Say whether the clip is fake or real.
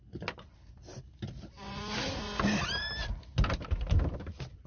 real